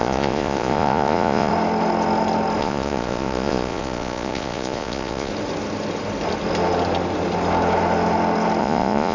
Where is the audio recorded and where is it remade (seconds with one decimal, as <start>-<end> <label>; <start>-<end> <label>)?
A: 0.0-1.5 remade; 1.5-2.6 recorded; 2.6-5.3 remade; 5.3-8.6 recorded; 8.6-9.1 remade